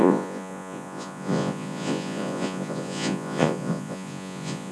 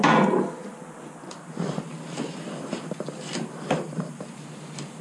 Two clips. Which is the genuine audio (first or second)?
second